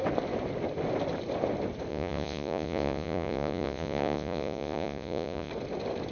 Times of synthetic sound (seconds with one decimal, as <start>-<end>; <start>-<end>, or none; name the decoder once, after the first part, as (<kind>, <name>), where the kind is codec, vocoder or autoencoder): 1.9-5.5 (vocoder, Vocos)